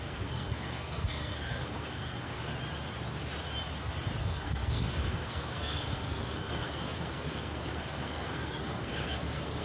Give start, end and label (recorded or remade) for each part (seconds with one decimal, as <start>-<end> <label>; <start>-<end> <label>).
0.0-2.5 remade; 2.5-4.2 recorded; 4.2-9.6 remade